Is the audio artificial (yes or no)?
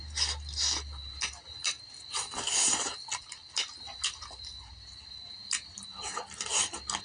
no